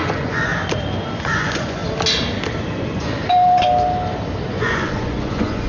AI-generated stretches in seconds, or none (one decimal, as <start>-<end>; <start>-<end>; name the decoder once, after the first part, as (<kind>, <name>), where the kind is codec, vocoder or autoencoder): 0.0-0.5 (vocoder, Vocos); 1.2-1.8; 2.6-3.1; 4.5-5.7